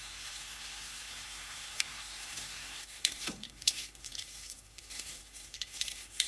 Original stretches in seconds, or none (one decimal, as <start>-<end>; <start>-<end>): none